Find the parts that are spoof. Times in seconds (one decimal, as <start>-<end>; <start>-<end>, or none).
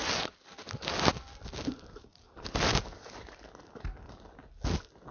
2.1-3.4